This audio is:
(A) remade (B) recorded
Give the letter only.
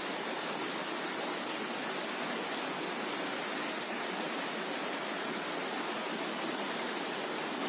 B